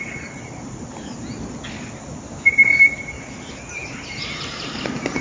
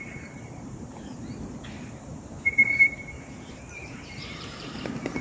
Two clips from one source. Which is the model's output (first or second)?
second